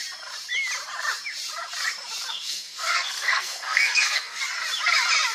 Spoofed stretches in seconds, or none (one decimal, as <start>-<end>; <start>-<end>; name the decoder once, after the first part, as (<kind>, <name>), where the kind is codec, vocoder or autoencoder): 2.3-4.4 (codec, SNAC)